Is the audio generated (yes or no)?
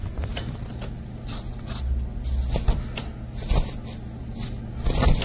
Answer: no